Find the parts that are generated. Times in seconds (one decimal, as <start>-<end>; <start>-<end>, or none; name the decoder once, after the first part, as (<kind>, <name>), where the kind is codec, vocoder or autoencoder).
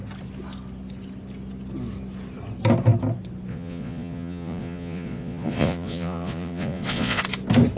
3.5-7.2 (vocoder, Vocos)